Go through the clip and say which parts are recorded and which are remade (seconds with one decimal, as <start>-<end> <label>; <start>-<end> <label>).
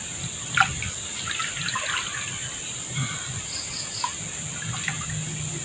0.0-5.6 recorded